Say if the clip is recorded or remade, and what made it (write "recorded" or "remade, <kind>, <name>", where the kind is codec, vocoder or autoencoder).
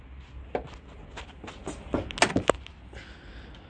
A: recorded